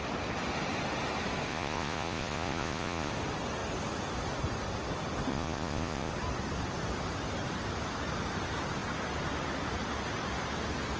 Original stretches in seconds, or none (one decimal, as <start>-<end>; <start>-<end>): 0.0-1.5; 3.1-5.3; 6.1-11.0